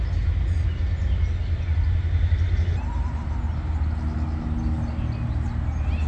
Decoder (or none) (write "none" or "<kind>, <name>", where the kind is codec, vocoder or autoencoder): none